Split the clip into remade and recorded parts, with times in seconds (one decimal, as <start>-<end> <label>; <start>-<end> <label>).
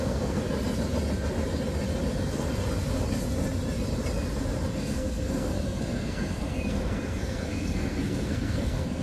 0.0-0.4 remade; 0.4-4.8 recorded; 4.8-9.0 remade